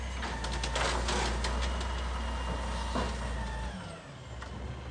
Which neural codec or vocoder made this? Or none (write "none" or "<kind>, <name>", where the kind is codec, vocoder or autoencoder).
none